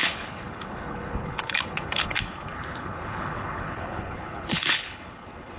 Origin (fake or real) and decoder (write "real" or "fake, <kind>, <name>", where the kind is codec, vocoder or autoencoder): fake, codec, HILCodec